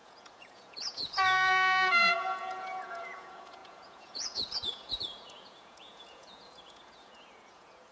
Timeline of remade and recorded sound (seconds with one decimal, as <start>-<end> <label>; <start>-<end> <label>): 0.0-7.9 remade